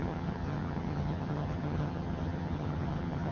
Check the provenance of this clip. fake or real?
fake